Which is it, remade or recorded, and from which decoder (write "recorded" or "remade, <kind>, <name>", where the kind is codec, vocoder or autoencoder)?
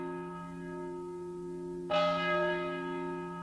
recorded